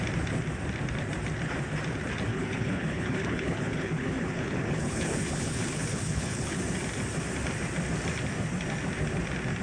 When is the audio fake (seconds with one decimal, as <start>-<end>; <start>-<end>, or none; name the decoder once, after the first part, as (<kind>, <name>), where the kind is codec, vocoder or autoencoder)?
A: 2.3-6.6 (codec, HILCodec)